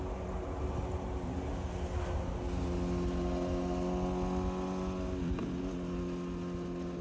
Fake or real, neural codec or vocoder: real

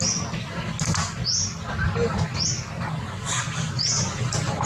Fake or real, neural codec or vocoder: real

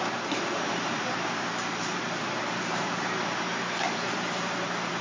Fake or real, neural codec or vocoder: fake, vocoder, BigVGAN v2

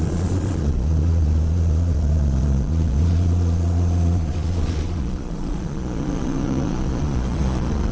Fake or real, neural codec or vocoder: fake, vocoder, Vocos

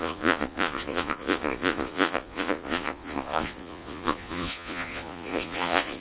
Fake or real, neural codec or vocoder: fake, vocoder, Vocos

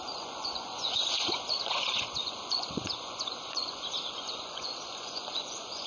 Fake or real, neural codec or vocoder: fake, vocoder, Vocos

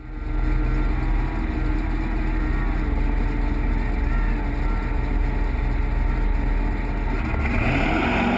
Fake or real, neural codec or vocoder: real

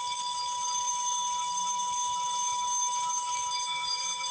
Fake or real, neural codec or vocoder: fake, autoencoder, DAC-VAE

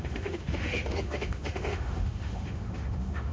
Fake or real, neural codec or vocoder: fake, autoencoder, DAC-VAE